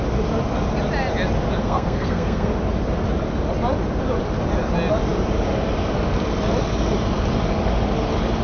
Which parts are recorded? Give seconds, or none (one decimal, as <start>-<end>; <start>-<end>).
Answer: 0.0-1.6; 2.5-8.4